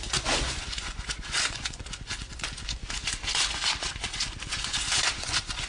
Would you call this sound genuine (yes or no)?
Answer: no